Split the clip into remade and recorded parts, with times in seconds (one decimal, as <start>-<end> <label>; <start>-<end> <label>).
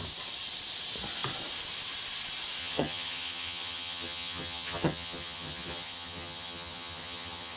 0.0-2.6 recorded; 2.6-7.6 remade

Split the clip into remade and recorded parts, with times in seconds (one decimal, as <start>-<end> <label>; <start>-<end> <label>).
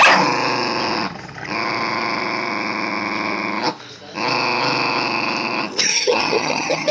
0.0-5.9 recorded; 5.9-6.9 remade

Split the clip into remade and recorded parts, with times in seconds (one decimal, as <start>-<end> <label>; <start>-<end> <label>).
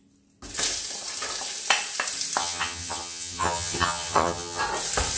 0.0-2.4 recorded; 2.4-4.6 remade; 4.6-5.2 recorded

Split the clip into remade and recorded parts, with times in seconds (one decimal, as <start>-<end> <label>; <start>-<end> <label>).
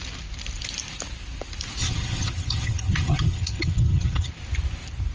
0.0-1.8 recorded; 1.8-4.3 remade; 4.3-5.1 recorded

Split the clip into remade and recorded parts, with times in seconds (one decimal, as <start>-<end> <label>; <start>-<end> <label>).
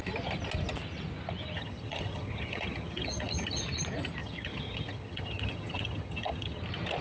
0.0-1.6 recorded; 1.6-3.6 remade; 3.6-4.2 recorded; 4.2-6.6 remade; 6.6-7.0 recorded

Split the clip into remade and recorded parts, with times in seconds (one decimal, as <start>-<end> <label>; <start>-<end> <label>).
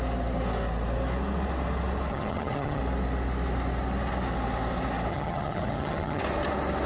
0.0-2.1 recorded; 2.1-2.8 remade; 2.8-5.1 recorded; 5.1-6.2 remade; 6.2-6.9 recorded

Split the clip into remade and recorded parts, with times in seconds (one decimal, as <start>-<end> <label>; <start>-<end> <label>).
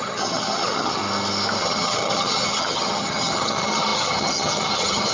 0.0-1.0 remade; 1.0-1.6 recorded; 1.6-5.1 remade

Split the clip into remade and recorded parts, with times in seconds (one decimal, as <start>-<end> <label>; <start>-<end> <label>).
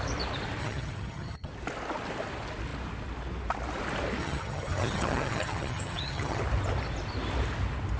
0.0-0.6 recorded; 0.6-1.5 remade; 1.5-4.2 recorded; 4.2-6.4 remade; 6.4-8.0 recorded